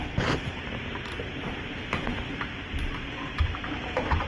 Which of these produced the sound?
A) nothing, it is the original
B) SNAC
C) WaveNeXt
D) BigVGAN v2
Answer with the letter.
A